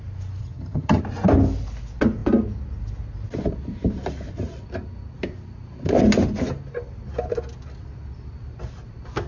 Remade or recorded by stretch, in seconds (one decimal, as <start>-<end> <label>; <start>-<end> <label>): 0.0-0.4 recorded; 0.4-1.0 remade; 1.0-9.3 recorded